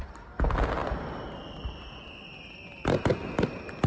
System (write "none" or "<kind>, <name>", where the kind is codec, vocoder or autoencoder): none